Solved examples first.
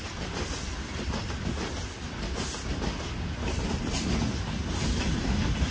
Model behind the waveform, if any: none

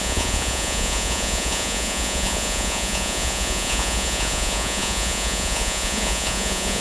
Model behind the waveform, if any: vocoder, Vocos